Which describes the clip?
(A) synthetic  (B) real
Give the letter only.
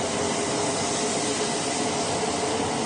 B